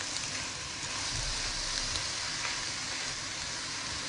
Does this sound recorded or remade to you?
recorded